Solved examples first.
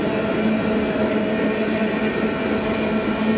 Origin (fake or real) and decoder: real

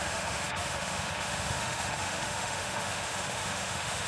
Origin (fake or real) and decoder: fake, autoencoder, DAC-VAE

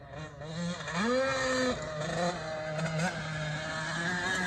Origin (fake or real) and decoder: real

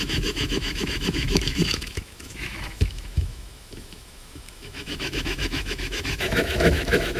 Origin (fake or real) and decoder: fake, autoencoder, DAC-VAE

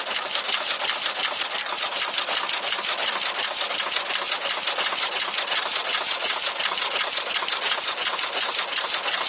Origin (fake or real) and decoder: real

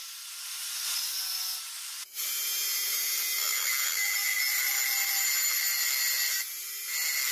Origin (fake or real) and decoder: real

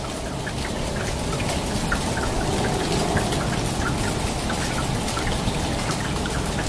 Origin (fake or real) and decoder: real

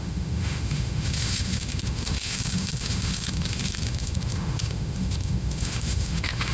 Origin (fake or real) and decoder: fake, autoencoder, DAC-VAE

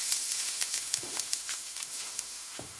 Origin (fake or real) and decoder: fake, autoencoder, DAC-VAE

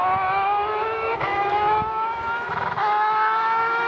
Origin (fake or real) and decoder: fake, autoencoder, DAC-VAE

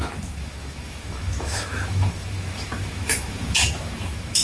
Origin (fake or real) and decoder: fake, autoencoder, DAC-VAE